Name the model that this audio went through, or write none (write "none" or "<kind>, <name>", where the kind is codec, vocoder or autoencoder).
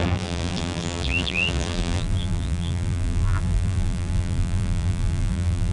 vocoder, BigVGAN v2